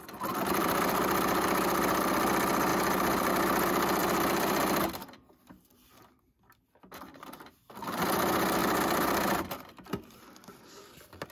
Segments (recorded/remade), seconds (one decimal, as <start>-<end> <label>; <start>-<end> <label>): 0.0-0.6 recorded; 0.6-2.1 remade; 2.1-4.0 recorded; 4.0-6.0 remade; 6.0-8.6 recorded; 8.6-9.6 remade; 9.6-11.3 recorded